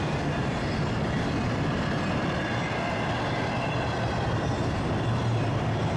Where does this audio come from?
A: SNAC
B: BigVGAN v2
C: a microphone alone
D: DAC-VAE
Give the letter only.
C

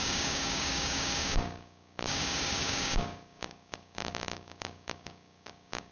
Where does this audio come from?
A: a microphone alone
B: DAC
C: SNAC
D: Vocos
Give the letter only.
B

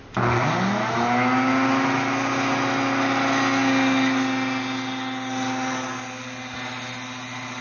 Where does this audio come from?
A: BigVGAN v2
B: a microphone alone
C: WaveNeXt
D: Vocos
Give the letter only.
B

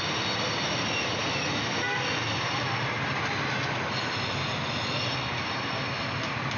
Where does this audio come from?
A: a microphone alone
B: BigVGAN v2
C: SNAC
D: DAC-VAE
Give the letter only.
A